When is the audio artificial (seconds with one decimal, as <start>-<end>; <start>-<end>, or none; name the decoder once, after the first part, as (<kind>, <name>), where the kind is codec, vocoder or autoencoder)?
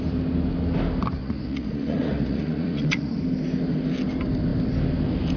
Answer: 1.2-3.2 (vocoder, Vocos)